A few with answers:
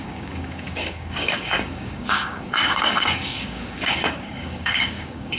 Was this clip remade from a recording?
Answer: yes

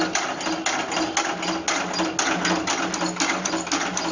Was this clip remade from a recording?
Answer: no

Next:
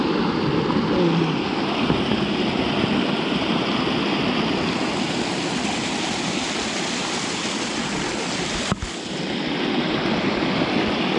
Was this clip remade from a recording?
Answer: no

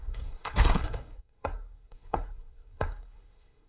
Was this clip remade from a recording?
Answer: yes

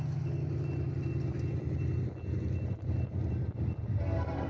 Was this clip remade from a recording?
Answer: no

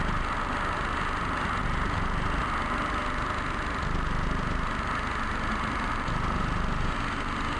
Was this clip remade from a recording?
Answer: no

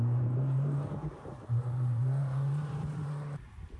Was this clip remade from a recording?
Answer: yes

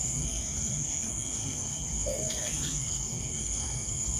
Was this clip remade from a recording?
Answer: yes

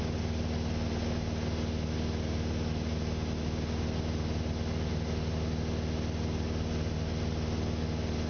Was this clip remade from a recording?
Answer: no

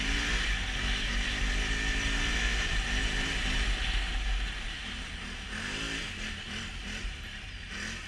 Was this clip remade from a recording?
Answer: no